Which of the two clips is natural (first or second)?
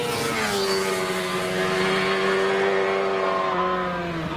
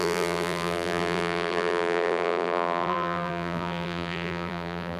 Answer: first